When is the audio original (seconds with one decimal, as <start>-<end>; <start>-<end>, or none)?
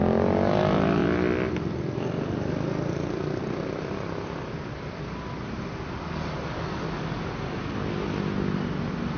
0.0-9.2